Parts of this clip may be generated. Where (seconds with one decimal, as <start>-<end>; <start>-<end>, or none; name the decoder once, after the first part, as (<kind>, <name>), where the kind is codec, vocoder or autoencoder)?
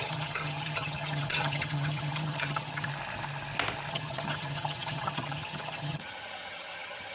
0.0-2.9 (vocoder, HiFi-GAN); 3.9-7.1